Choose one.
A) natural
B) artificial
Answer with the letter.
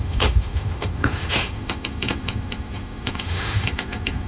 B